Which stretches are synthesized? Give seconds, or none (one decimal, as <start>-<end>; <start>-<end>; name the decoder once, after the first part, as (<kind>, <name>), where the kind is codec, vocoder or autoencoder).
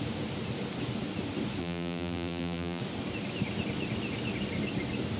1.6-2.8 (vocoder, BigVGAN v2)